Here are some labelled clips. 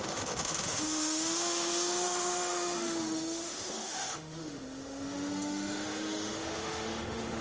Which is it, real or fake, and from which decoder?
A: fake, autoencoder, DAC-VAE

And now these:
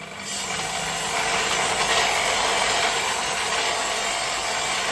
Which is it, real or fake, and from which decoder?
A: real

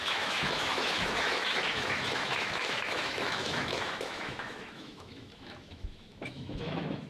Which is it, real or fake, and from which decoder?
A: fake, autoencoder, DAC-VAE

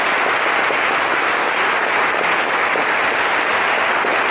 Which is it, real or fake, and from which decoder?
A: real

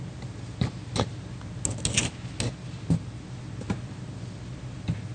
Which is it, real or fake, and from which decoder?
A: real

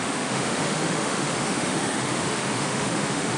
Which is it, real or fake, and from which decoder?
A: fake, autoencoder, DAC-VAE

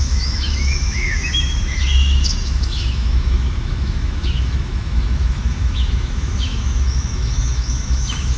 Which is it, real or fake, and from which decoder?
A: fake, autoencoder, DAC-VAE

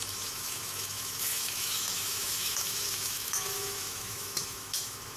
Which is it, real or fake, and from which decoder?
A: fake, autoencoder, DAC-VAE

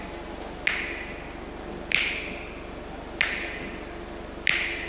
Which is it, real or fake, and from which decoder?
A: real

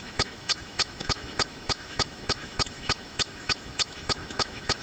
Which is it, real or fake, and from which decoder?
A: fake, autoencoder, DAC-VAE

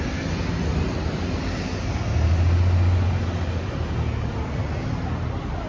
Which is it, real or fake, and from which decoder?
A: real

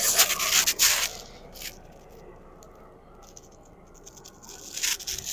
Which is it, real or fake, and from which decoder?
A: real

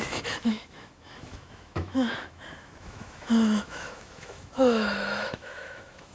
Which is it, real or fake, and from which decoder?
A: fake, autoencoder, DAC-VAE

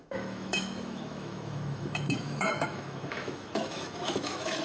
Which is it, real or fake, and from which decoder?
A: fake, autoencoder, DAC-VAE